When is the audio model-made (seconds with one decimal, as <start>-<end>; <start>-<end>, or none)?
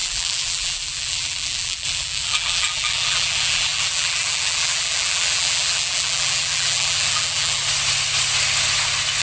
0.0-7.6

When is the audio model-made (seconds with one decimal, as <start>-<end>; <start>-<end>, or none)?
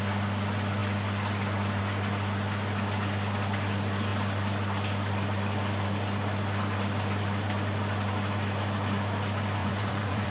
9.6-10.3